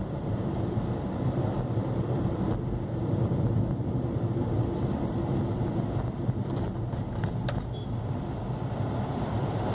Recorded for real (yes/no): no